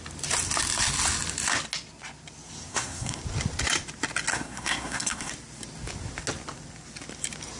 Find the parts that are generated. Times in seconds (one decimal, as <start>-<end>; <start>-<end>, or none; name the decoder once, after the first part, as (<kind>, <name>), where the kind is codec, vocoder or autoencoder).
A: 2.7-3.2 (codec, SNAC); 4.3-5.3